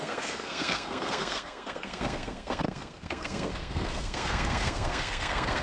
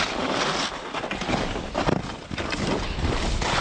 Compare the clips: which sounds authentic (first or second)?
second